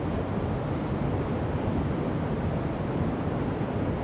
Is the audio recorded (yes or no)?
yes